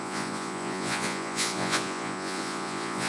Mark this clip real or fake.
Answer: fake